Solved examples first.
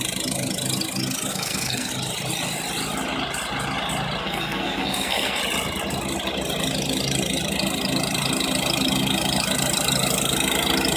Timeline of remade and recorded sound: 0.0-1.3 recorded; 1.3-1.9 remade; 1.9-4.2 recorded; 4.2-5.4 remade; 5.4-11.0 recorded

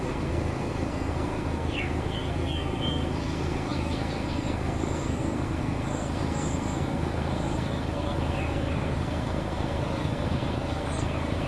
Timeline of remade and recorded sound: 0.0-11.5 remade

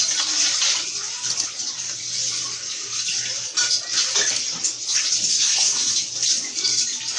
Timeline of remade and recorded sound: 0.0-5.3 recorded; 5.3-5.9 remade; 5.9-7.2 recorded

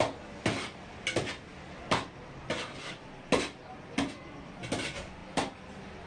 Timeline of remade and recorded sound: 0.0-6.1 recorded

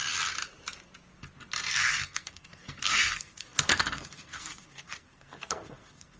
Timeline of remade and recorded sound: 0.0-1.7 recorded; 1.7-6.2 remade